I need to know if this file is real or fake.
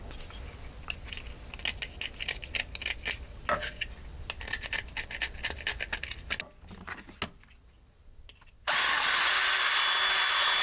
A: real